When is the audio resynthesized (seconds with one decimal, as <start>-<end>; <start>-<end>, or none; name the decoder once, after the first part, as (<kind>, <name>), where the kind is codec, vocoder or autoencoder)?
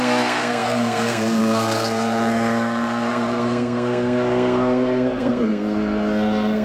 0.0-6.6 (codec, SNAC)